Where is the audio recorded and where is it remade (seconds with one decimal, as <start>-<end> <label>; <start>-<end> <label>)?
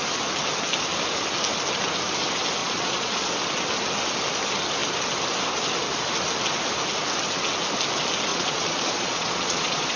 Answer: 0.0-2.6 recorded; 2.6-3.3 remade; 3.3-8.3 recorded; 8.3-10.0 remade